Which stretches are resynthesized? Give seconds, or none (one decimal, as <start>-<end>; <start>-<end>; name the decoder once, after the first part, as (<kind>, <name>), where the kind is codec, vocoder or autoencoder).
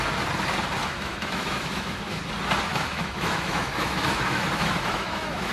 0.8-2.2 (autoencoder, DAC-VAE); 2.7-5.5